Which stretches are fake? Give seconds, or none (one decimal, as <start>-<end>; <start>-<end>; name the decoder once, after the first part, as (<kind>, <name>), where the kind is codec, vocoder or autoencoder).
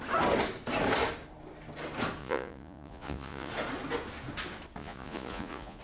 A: 2.2-3.5 (vocoder, Vocos); 4.8-5.8